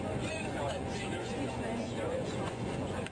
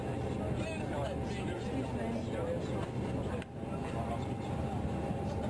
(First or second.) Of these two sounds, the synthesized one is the first